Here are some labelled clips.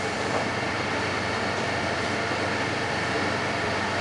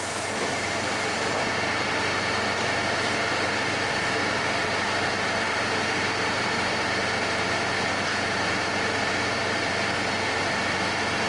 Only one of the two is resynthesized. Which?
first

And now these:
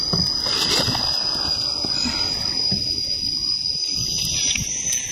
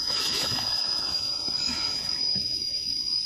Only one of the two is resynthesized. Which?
second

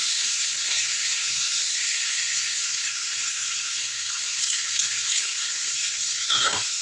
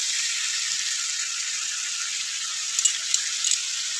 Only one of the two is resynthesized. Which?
first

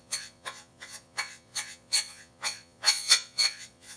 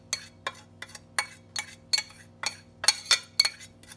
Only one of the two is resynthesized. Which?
first